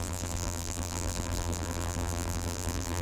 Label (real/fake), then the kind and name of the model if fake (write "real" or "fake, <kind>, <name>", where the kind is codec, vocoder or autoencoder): fake, vocoder, BigVGAN v2